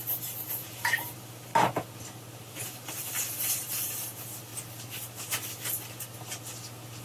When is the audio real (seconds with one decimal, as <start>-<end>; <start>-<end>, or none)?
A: 1.5-2.5; 4.5-7.0